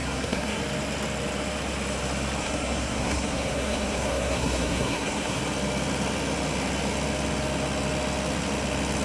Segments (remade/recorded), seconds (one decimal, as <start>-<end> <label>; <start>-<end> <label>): 0.0-0.6 remade; 0.6-2.4 recorded; 2.4-5.4 remade; 5.4-9.0 recorded